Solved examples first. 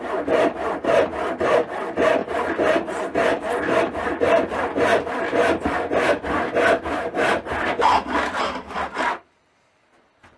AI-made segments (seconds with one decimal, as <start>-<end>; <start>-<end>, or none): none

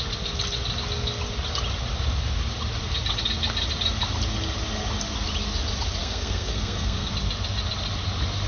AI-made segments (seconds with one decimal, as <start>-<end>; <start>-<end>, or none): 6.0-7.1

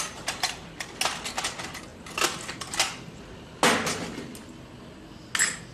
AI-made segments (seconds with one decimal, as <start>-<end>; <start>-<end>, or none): none

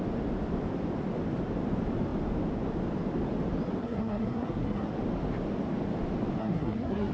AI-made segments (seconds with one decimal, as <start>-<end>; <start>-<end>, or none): 3.8-4.9; 6.4-7.1

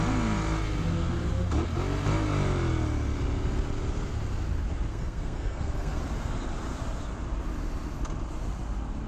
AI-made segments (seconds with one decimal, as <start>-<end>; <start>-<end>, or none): 4.9-6.0

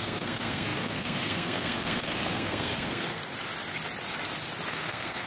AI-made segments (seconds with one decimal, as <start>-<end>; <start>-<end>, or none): 0.0-3.2; 4.7-5.3

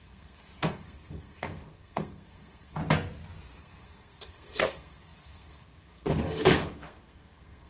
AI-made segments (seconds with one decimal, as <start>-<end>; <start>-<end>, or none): 0.0-2.8; 3.6-7.7

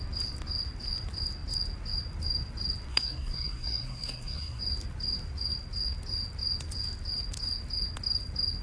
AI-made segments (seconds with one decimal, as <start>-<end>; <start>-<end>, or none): 2.9-4.6